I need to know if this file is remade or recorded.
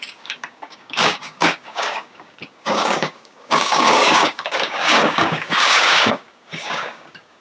remade